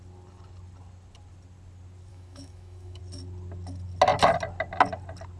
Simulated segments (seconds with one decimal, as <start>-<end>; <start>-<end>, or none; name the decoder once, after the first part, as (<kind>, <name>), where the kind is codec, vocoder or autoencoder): 2.1-3.0 (autoencoder, DAC-VAE)